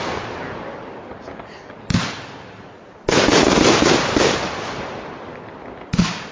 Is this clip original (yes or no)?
yes